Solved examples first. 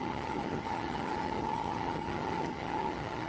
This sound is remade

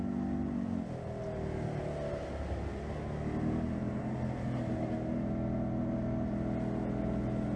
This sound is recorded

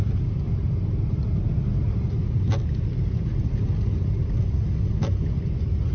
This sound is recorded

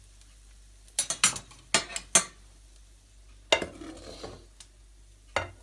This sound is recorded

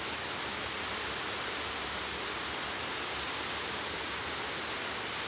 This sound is recorded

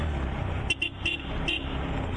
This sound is recorded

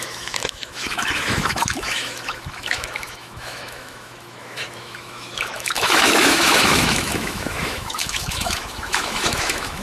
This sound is remade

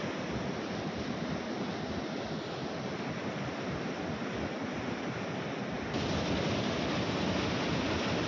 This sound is recorded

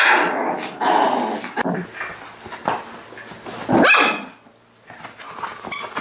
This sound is recorded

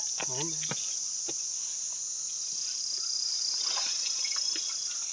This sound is recorded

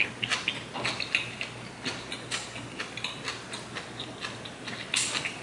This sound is recorded